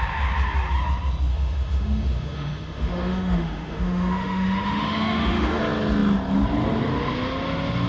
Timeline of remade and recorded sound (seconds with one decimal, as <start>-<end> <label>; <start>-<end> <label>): 0.0-1.3 recorded; 1.3-5.6 remade; 5.6-7.9 recorded